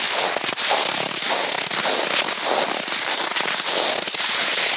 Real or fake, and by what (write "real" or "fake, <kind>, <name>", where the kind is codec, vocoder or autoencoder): real